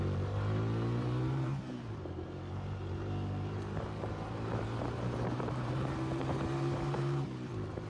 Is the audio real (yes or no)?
no